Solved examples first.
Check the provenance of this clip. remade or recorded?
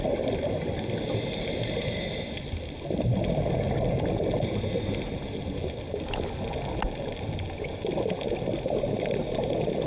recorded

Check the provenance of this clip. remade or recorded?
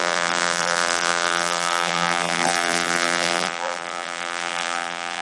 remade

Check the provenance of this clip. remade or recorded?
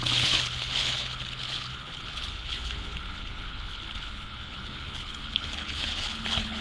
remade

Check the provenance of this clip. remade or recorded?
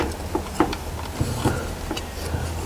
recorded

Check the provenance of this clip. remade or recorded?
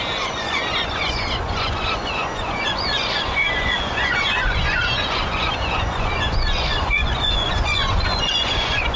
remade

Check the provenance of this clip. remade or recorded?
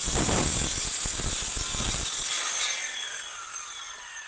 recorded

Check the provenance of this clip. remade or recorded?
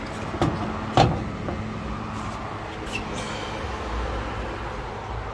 recorded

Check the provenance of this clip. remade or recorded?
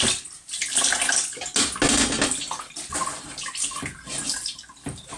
recorded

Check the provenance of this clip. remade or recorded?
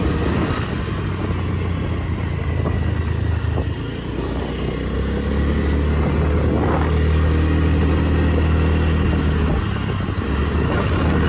recorded